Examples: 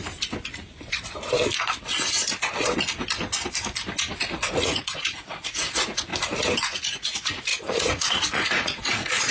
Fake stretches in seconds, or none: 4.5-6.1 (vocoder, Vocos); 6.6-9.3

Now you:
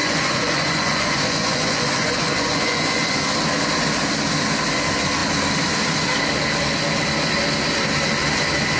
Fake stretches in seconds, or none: 0.0-3.2 (vocoder, Vocos)

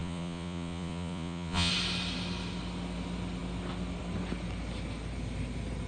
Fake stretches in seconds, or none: 0.0-1.7 (vocoder, Vocos)

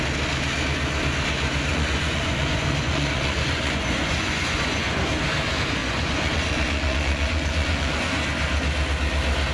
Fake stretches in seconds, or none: 1.7-5.0 (vocoder, Vocos); 5.8-8.1

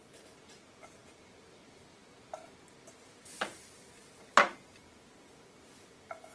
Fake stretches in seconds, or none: none

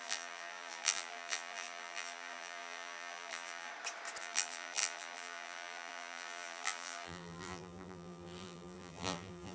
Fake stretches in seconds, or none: 0.0-3.7 (vocoder, BigVGAN v2); 4.2-9.5

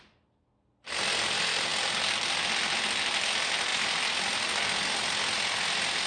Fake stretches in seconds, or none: none

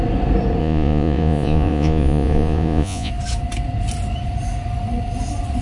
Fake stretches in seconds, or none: 0.6-3.1 (vocoder, Vocos)